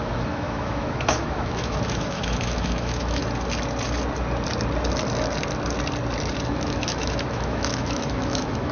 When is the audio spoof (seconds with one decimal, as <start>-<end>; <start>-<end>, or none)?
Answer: 0.0-3.2; 6.5-8.7